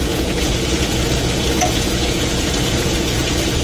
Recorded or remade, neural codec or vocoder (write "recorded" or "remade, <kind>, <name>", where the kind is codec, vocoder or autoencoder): remade, vocoder, Vocos